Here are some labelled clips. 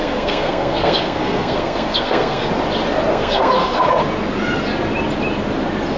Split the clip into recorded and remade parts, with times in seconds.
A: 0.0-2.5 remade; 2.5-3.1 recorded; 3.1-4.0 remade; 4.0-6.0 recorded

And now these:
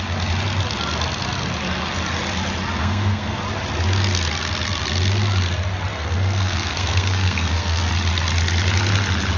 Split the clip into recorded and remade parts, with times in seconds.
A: 0.0-2.8 recorded; 2.8-3.4 remade; 3.4-5.9 recorded; 5.9-7.9 remade; 7.9-9.4 recorded